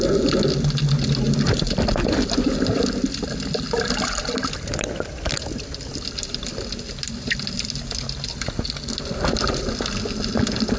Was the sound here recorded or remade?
recorded